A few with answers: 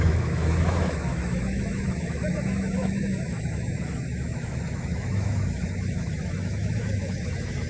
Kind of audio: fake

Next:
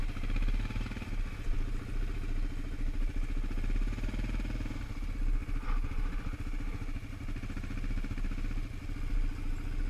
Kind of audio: real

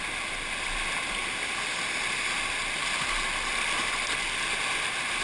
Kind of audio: real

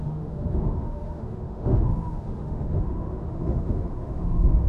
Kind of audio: fake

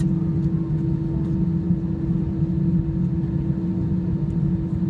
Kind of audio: real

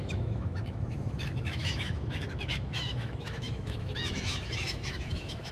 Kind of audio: fake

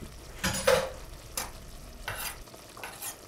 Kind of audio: real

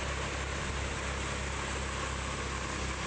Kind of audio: real